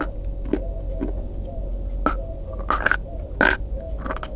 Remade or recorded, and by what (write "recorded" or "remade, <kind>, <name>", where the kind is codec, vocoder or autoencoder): recorded